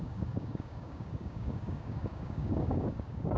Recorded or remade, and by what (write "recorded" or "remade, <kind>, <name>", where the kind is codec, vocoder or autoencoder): remade, codec, DAC